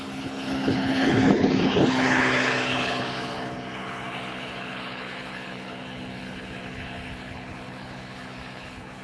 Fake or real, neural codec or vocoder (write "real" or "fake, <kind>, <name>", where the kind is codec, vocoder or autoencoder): fake, codec, HILCodec